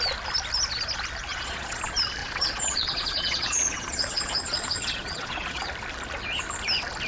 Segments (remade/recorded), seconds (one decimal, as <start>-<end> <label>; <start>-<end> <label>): 0.0-1.3 recorded; 1.3-1.8 remade; 1.8-2.2 recorded; 2.2-5.6 remade; 5.6-7.1 recorded